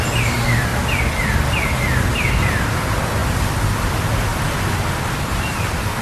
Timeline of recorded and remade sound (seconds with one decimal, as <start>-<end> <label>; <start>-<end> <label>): 0.0-0.7 remade; 0.7-2.1 recorded; 2.1-3.2 remade; 3.2-3.8 recorded; 3.8-4.3 remade; 4.3-4.9 recorded; 4.9-6.0 remade